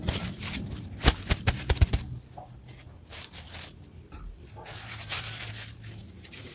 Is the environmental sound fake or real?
real